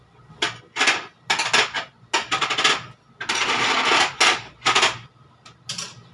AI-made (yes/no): no